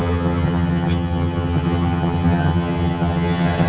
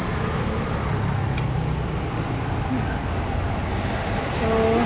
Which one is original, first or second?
second